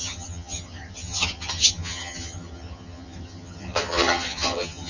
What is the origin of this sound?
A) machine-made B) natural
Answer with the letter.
A